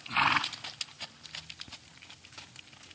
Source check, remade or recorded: recorded